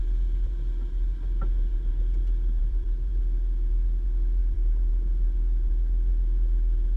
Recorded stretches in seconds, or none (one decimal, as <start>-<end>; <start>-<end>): 0.0-2.6; 3.1-4.4; 4.9-7.0